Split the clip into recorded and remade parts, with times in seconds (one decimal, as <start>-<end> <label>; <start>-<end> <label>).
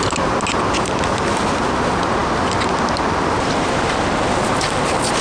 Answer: 0.0-5.2 recorded